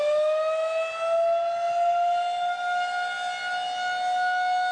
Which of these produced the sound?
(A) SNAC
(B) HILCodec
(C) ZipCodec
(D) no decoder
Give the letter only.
D